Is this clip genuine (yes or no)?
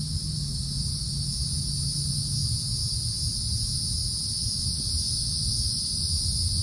yes